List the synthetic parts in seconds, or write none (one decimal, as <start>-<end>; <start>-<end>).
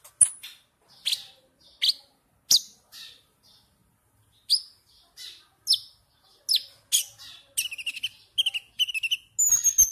none